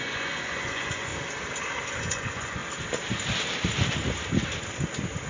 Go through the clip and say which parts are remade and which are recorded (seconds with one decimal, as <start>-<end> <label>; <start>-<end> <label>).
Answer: 0.0-1.1 remade; 1.1-2.0 recorded; 2.0-2.6 remade; 2.6-5.3 recorded